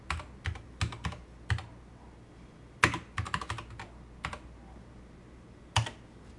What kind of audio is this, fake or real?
real